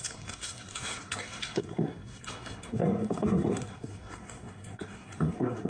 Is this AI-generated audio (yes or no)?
yes